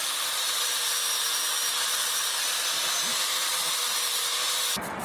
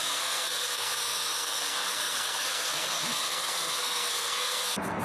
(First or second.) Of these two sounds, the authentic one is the first